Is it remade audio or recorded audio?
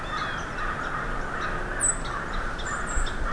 recorded